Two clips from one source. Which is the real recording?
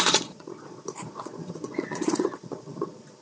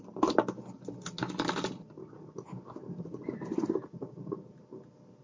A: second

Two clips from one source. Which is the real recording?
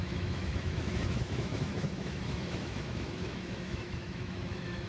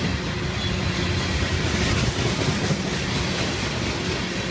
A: second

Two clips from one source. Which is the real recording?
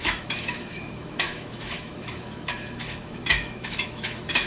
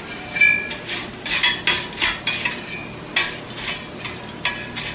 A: second